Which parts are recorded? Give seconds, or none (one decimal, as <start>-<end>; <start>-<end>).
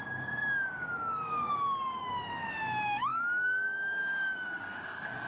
none